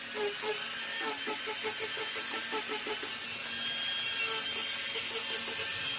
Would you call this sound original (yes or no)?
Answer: yes